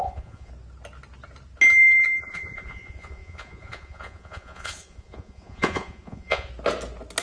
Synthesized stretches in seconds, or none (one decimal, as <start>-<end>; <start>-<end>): 0.0-0.5; 2.2-6.5